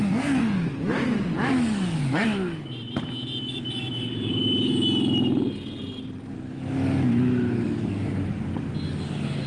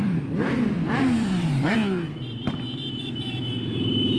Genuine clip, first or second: first